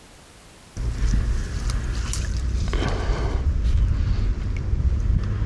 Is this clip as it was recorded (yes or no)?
yes